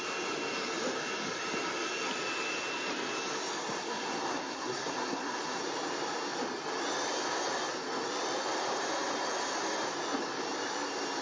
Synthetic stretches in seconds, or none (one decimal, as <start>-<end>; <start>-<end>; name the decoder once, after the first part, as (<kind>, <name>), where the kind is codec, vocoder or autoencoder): 3.8-5.6 (codec, SNAC)